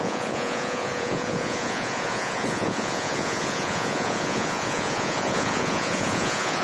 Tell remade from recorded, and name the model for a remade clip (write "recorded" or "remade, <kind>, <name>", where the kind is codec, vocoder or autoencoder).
remade, vocoder, Vocos